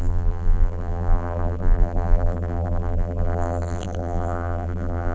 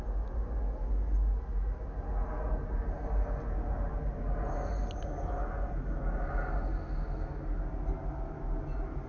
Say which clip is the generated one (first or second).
first